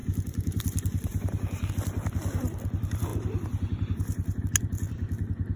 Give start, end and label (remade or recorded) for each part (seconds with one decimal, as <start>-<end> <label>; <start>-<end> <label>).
0.0-1.7 remade; 1.7-3.1 recorded; 3.1-4.4 remade; 4.4-5.6 recorded